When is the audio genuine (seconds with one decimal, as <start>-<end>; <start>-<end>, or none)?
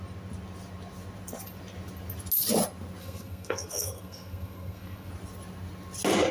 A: 0.0-3.0; 5.1-6.3